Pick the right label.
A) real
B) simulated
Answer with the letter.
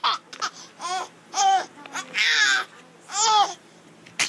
A